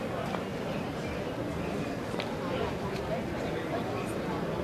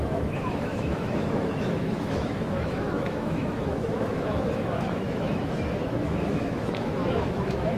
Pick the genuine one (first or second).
first